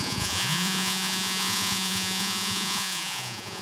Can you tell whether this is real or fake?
fake